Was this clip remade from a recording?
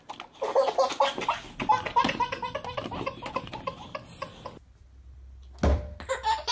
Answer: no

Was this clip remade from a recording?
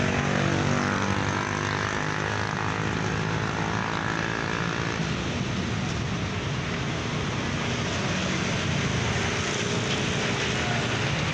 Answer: no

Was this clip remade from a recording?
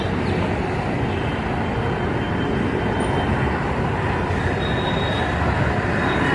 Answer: no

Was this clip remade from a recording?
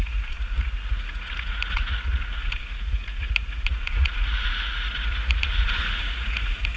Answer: yes